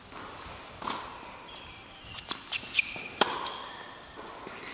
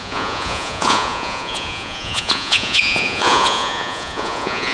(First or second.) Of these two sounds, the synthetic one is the second